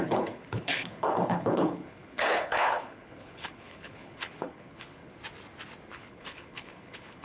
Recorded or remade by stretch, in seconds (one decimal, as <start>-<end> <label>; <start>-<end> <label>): 0.0-5.1 remade; 5.1-5.9 recorded; 5.9-7.2 remade